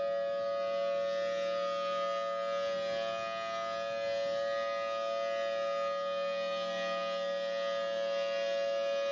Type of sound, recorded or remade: recorded